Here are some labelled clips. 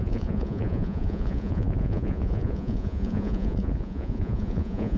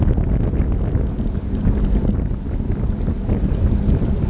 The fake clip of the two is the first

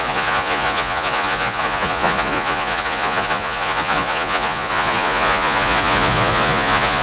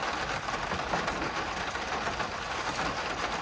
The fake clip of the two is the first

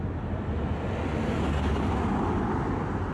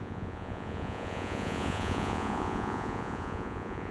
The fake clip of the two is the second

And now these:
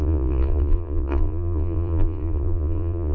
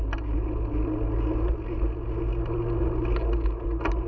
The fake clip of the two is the first